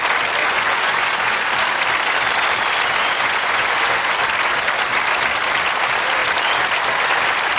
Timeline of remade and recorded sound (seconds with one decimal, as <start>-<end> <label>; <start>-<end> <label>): 0.0-0.4 recorded; 0.4-1.4 remade; 1.4-3.0 recorded; 3.0-4.2 remade; 4.2-7.6 recorded